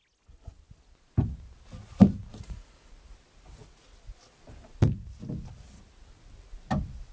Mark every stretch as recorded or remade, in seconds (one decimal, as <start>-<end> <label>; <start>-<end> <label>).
0.0-2.3 recorded; 2.3-2.9 remade; 2.9-7.1 recorded